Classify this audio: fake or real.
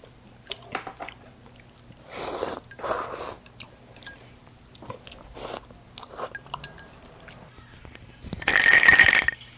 real